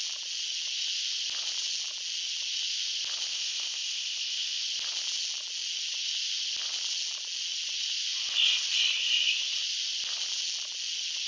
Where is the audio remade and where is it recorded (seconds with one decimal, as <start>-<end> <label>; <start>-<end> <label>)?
0.0-3.3 recorded; 3.3-4.6 remade; 4.6-11.3 recorded